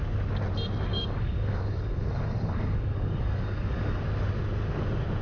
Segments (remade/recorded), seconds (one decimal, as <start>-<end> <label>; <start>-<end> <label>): 0.0-0.9 recorded; 0.9-4.0 remade; 4.0-5.2 recorded